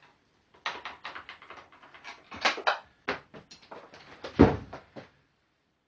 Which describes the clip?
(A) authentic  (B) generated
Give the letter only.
A